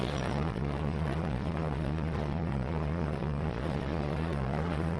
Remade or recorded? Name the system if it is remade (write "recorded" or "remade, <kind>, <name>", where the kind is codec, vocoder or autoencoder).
remade, vocoder, Vocos